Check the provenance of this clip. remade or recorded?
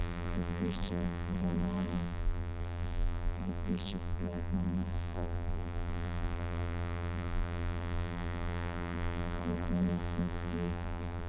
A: remade